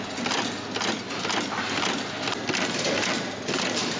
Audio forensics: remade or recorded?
recorded